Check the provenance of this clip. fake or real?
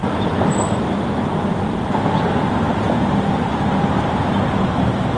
real